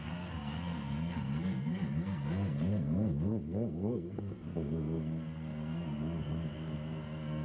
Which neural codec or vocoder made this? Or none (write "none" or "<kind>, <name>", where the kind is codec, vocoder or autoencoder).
codec, SNAC